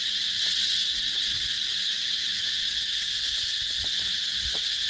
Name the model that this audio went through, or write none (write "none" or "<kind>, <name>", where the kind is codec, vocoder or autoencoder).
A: vocoder, WaveNeXt